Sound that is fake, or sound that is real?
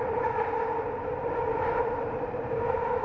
fake